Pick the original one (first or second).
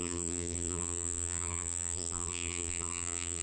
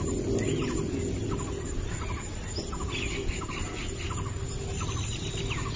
second